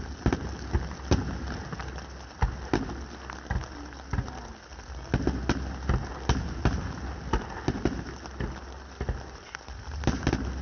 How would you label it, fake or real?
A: real